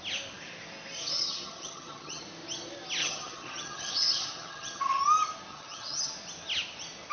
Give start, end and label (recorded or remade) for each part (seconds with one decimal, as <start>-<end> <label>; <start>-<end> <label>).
0.0-1.0 recorded; 1.0-2.2 remade; 2.2-3.0 recorded; 3.0-5.0 remade; 5.0-5.5 recorded; 5.5-6.1 remade; 6.1-7.1 recorded